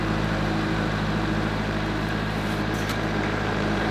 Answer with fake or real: fake